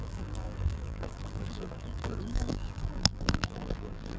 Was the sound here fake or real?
fake